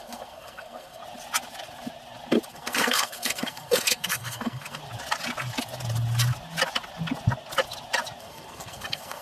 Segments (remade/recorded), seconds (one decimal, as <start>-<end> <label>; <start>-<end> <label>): 0.0-1.0 remade; 1.0-2.5 recorded; 2.5-4.8 remade; 4.8-8.2 recorded; 8.2-9.2 remade